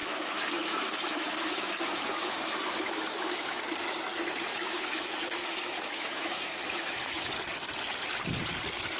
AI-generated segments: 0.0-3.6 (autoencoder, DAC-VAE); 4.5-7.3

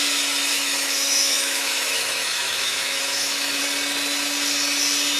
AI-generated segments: 0.5-3.6 (autoencoder, DAC-VAE)

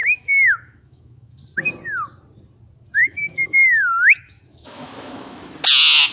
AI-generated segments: 0.0-1.3 (autoencoder, DAC-VAE); 3.0-5.5